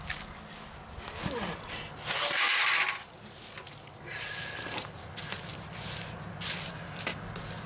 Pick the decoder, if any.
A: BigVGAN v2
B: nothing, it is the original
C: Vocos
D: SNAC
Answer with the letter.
B